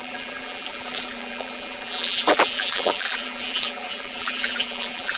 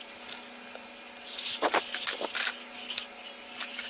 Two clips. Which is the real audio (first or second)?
second